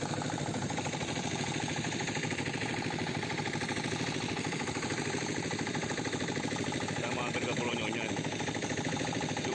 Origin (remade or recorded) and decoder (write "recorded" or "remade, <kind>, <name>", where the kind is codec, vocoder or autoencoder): remade, vocoder, BigVGAN v2